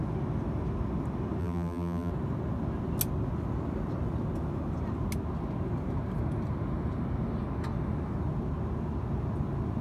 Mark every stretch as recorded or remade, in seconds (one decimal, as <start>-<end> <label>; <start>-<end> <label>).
0.0-1.4 recorded; 1.4-2.1 remade; 2.1-9.8 recorded